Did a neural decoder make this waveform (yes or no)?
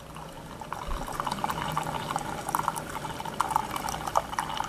no